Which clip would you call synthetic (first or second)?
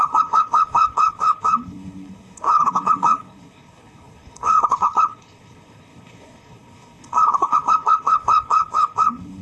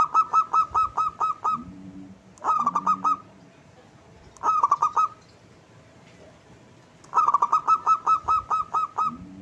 first